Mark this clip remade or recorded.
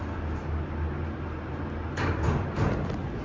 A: recorded